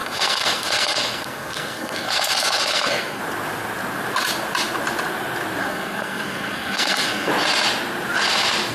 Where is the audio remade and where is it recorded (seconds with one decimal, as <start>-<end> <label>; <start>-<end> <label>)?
0.0-3.2 remade; 3.2-5.6 recorded; 5.6-7.3 remade; 7.3-8.7 recorded